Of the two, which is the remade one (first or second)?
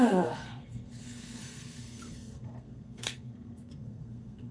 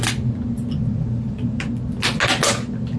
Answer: first